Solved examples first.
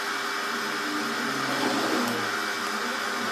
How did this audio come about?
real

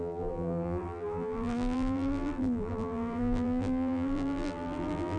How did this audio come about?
fake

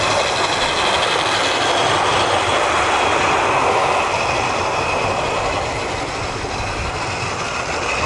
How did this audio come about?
real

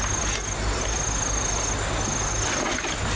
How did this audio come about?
real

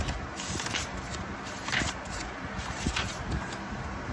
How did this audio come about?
fake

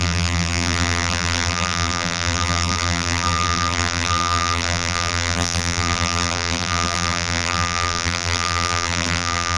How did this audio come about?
fake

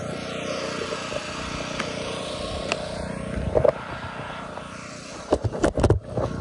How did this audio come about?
real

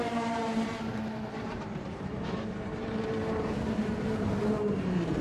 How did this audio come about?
fake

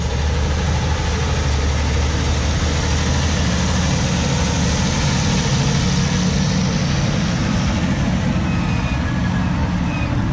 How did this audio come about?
real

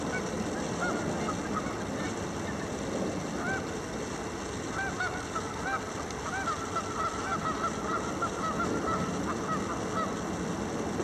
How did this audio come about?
real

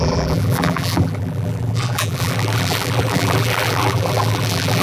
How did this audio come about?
fake